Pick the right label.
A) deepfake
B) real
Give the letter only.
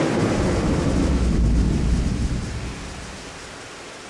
B